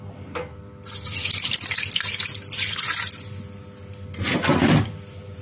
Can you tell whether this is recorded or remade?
recorded